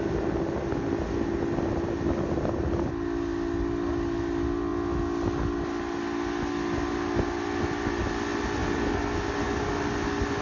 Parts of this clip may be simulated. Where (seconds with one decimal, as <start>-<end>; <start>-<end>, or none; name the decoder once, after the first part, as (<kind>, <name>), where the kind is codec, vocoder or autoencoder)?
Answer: none